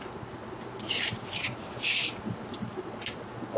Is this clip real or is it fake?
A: real